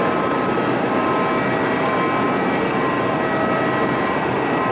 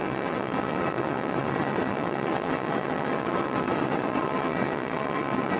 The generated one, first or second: second